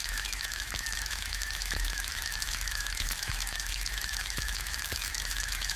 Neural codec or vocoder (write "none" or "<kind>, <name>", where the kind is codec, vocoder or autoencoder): autoencoder, DAC-VAE